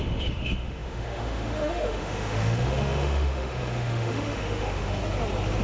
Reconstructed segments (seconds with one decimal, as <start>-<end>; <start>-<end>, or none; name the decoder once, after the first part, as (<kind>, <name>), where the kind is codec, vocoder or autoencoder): 0.0-5.0 (autoencoder, DAC-VAE)